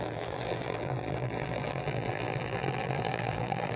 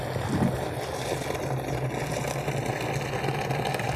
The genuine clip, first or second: second